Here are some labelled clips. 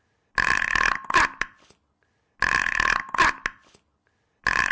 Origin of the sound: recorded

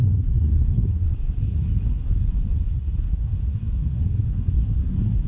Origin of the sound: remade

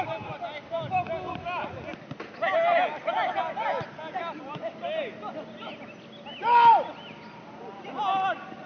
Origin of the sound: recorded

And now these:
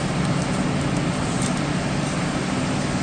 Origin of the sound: recorded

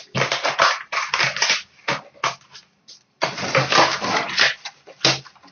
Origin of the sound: recorded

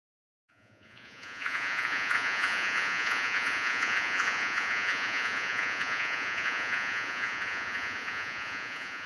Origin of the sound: remade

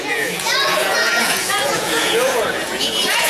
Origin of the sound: remade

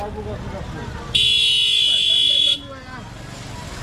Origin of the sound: recorded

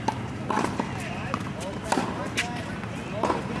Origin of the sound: recorded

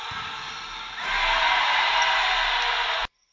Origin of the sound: recorded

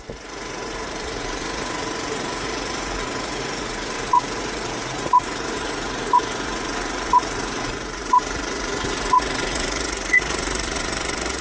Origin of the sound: remade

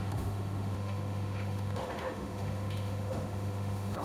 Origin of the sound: remade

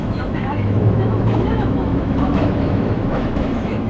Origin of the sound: remade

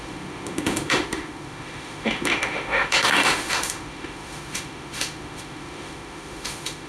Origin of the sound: remade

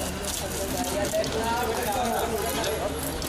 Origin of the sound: recorded